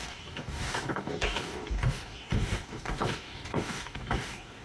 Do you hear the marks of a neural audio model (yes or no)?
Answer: yes